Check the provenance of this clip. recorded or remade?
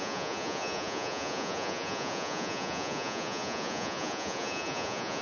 remade